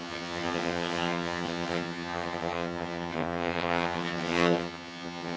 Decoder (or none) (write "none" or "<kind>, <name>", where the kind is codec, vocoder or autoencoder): vocoder, HiFi-GAN